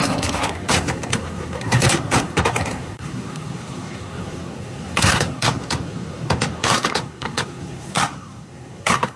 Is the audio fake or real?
fake